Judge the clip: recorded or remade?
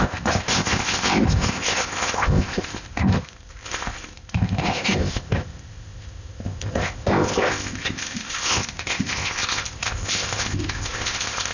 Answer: remade